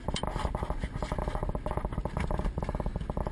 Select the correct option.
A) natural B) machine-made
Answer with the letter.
A